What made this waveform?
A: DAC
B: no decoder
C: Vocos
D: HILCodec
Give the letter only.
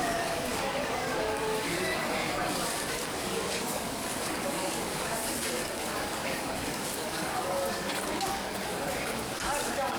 A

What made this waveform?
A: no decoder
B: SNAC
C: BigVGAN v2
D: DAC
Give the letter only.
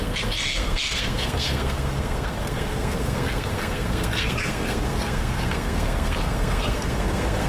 B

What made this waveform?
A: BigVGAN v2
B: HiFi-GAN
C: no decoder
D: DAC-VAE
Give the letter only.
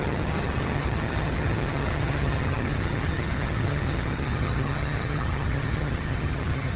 B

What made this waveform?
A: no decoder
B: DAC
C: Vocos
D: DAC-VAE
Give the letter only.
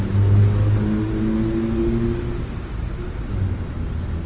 A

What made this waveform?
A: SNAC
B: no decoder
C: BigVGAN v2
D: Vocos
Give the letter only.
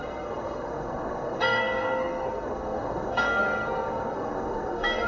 A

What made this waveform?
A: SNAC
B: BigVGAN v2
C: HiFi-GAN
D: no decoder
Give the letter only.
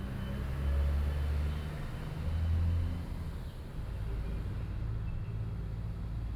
D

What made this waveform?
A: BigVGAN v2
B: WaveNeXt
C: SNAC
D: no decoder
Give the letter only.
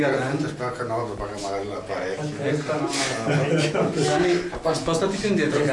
D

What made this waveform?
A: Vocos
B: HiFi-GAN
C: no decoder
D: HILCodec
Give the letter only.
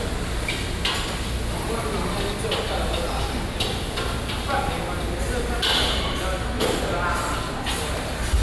C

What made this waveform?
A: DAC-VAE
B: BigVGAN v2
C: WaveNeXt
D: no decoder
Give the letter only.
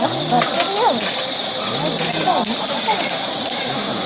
D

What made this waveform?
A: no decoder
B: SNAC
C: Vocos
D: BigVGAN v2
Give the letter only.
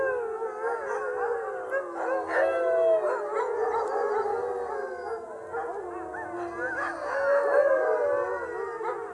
A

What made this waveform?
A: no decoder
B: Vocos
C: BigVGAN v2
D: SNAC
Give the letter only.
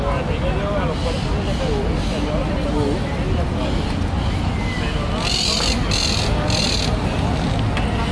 A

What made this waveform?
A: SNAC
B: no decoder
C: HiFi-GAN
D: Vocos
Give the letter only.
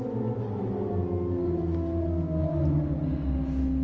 B